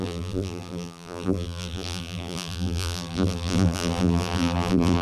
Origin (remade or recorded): remade